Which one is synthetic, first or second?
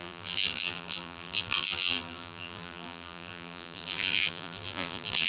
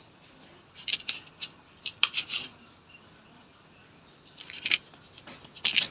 first